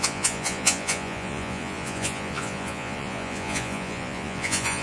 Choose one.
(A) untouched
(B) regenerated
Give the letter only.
B